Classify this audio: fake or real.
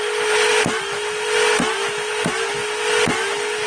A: real